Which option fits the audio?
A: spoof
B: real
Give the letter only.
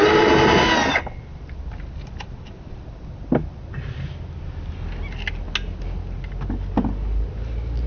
B